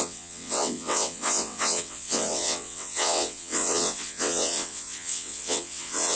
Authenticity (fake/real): fake